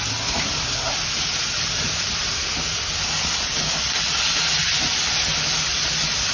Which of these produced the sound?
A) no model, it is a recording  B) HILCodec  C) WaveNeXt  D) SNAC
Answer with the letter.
A